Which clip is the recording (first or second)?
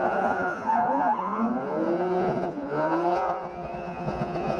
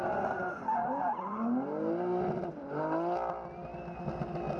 second